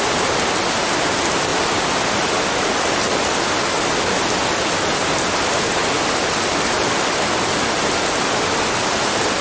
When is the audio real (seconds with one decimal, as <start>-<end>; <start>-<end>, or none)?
0.0-1.5; 3.9-5.8; 8.6-9.4